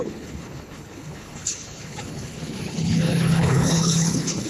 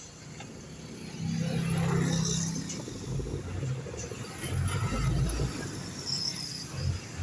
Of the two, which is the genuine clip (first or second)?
second